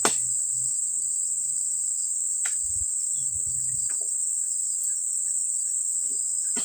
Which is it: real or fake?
fake